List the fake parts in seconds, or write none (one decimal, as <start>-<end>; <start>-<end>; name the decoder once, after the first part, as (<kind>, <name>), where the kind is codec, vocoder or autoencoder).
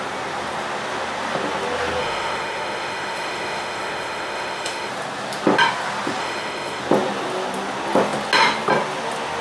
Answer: 2.0-4.9 (autoencoder, DAC-VAE); 6.2-6.8